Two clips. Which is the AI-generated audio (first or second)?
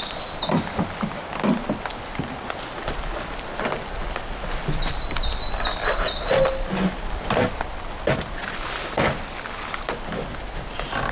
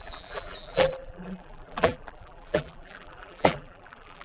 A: second